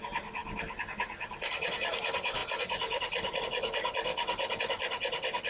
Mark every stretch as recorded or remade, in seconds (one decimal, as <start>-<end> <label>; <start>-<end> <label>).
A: 0.0-5.5 recorded